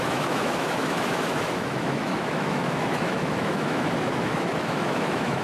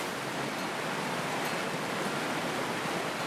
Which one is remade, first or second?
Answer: first